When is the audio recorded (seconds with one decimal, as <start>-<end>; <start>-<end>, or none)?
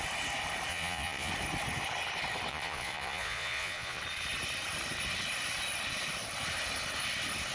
0.0-0.7; 1.3-2.5; 4.0-7.5